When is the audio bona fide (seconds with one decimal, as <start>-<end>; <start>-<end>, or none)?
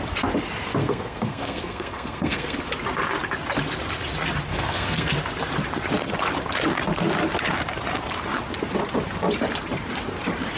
0.0-0.8; 2.6-4.5; 5.1-10.6